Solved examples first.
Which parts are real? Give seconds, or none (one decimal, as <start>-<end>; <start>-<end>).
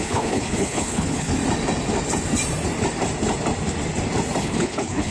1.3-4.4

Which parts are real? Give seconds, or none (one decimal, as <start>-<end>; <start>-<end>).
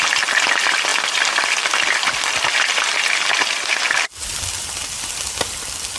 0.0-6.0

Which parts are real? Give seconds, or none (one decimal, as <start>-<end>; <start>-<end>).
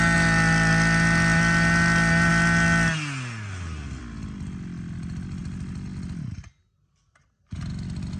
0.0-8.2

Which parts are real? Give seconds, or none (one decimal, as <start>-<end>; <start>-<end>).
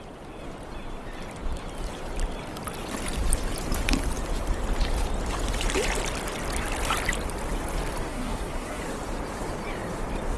0.0-8.1; 8.8-10.4